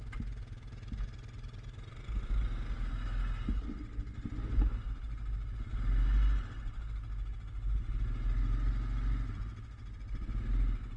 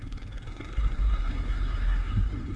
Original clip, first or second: first